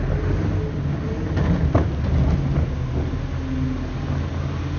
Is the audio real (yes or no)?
yes